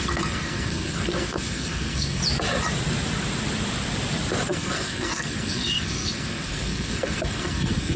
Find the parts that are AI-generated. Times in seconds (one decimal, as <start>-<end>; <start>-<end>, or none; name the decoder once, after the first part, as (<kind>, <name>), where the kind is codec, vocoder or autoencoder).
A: 0.0-2.2 (codec, SNAC); 4.5-8.0

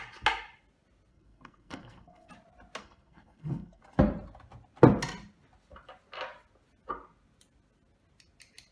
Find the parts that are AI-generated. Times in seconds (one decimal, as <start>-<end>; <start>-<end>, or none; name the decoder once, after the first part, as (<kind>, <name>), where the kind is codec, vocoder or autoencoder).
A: 1.1-2.3 (codec, SNAC); 2.8-3.8

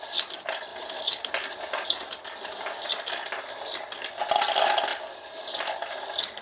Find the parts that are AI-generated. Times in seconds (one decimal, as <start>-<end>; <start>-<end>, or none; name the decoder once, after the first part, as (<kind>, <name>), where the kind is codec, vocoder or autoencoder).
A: none

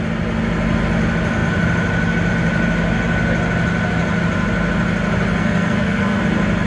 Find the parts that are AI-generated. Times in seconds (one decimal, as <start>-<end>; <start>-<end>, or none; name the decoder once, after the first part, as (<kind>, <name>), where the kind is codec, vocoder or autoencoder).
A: 5.4-6.2 (codec, SNAC)

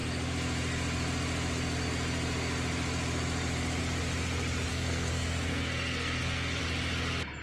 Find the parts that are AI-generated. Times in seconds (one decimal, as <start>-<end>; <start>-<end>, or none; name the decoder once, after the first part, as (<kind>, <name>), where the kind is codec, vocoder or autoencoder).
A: 4.7-6.6 (codec, SNAC)

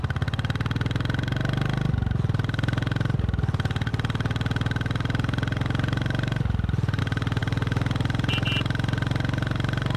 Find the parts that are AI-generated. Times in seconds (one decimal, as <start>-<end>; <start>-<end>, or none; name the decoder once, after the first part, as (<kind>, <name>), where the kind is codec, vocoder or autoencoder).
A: none

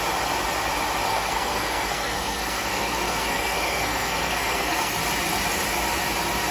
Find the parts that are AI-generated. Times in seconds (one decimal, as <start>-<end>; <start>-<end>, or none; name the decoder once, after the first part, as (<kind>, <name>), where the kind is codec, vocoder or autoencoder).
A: 1.1-5.0 (codec, SNAC)